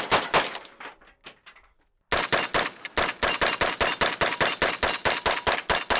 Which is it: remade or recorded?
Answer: recorded